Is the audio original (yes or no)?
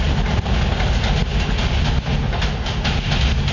yes